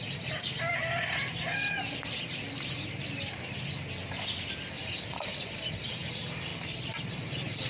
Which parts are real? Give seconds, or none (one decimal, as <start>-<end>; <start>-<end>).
0.5-4.7; 6.5-7.1